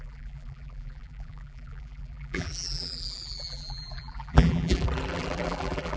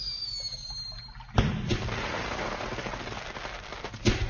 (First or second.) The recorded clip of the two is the second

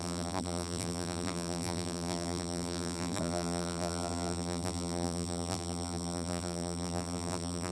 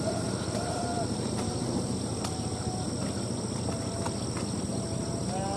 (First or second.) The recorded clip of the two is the second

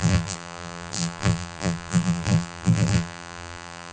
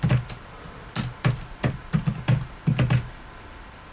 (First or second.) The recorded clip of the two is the second